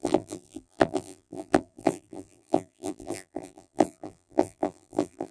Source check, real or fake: fake